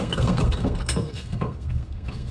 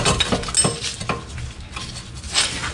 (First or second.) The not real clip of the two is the first